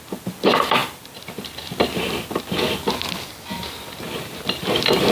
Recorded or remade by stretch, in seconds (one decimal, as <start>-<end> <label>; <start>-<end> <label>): 0.0-5.1 recorded